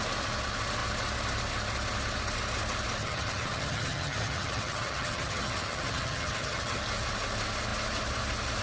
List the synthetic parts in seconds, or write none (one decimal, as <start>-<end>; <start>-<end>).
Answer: 3.0-6.8